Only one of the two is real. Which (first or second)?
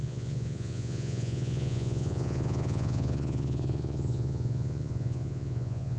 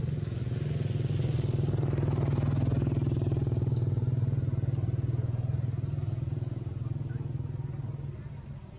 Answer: second